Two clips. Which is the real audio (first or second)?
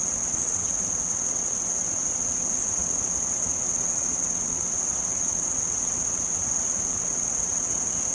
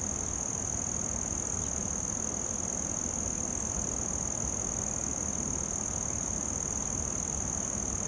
second